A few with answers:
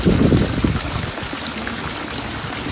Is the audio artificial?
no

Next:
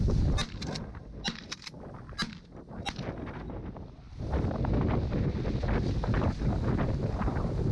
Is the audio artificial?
no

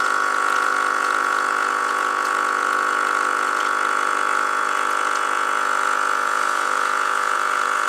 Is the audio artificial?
yes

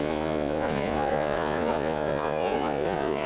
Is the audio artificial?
yes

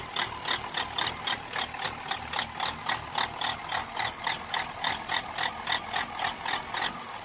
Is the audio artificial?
no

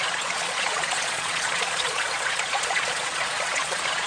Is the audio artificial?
yes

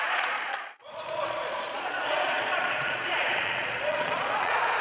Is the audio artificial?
yes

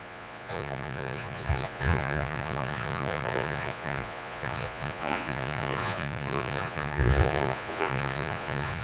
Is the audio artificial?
yes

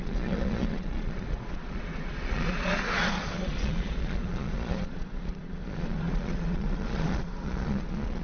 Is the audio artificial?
yes